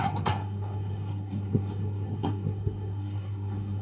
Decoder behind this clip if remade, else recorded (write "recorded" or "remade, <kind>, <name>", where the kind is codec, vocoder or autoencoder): remade, codec, SNAC